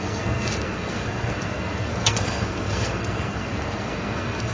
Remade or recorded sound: remade